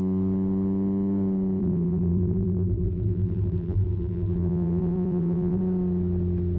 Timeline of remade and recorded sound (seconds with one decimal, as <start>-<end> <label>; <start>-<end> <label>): 0.0-1.6 recorded; 1.6-5.6 remade; 5.6-6.6 recorded